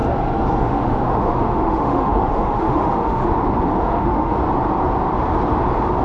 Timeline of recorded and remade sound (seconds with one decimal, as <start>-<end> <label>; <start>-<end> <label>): 0.0-0.6 recorded; 0.6-3.2 remade; 3.2-3.8 recorded; 3.8-4.4 remade; 4.4-6.0 recorded